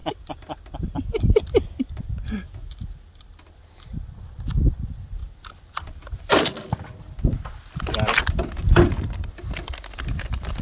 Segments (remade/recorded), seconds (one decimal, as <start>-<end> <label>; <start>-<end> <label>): 0.0-2.0 recorded; 2.0-10.6 remade